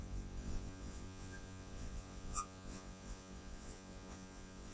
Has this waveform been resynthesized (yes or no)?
yes